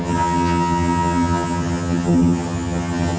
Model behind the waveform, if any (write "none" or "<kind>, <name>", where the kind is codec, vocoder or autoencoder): vocoder, HiFi-GAN